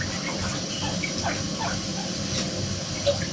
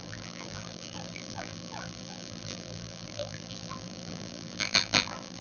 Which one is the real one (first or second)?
first